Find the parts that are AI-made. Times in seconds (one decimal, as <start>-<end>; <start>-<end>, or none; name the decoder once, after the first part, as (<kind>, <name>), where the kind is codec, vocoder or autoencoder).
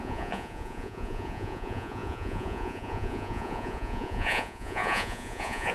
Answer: 0.0-5.7 (vocoder, Vocos)